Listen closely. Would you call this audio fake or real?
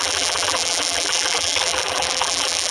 fake